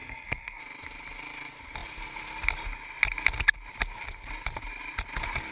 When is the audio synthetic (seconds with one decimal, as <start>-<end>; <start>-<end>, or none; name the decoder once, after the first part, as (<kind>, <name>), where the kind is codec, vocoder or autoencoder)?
0.0-0.6 (codec, SNAC)